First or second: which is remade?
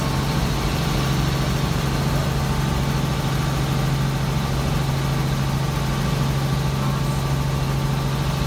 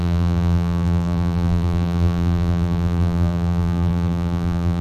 second